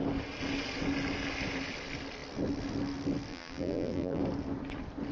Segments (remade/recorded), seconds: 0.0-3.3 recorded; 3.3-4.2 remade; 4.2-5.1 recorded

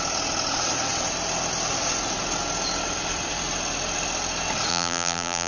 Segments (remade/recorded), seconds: 0.0-4.7 recorded; 4.7-5.5 remade

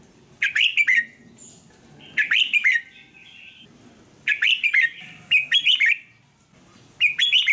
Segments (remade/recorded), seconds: 0.0-7.5 recorded

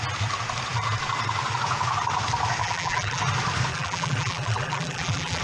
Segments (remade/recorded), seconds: 0.0-2.6 recorded; 2.6-3.2 remade; 3.2-3.7 recorded; 3.7-5.4 remade

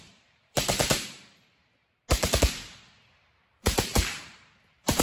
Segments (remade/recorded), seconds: 0.0-1.6 remade; 1.6-3.1 recorded; 3.1-5.0 remade

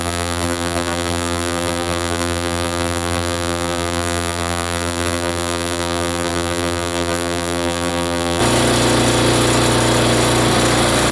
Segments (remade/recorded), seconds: 0.0-8.4 remade; 8.4-11.1 recorded